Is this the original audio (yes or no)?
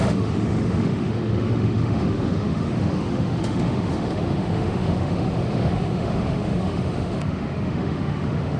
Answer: no